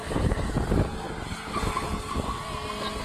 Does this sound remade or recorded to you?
recorded